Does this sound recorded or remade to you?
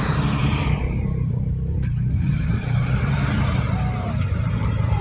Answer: remade